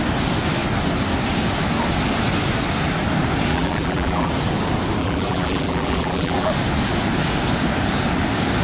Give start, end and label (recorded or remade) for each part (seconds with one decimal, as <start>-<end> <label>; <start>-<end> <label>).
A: 0.0-3.5 recorded; 3.5-4.3 remade; 4.3-5.0 recorded; 5.0-6.5 remade; 6.5-8.6 recorded